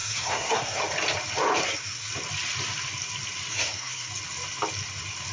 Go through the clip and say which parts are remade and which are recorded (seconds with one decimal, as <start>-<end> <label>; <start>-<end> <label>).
0.0-0.8 remade; 0.8-1.6 recorded; 1.6-2.1 remade; 2.1-3.5 recorded; 3.5-4.1 remade; 4.1-5.3 recorded